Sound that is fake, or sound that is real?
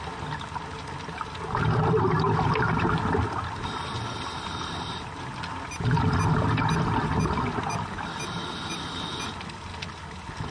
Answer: real